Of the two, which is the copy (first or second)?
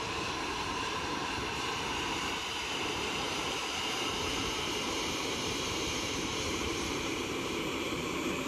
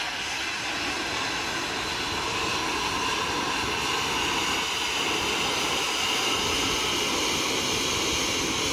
first